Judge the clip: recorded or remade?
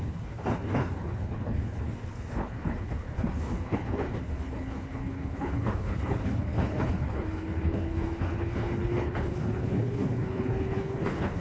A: remade